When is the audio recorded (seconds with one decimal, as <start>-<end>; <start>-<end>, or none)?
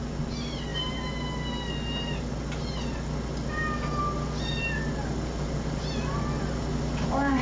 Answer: 0.0-7.4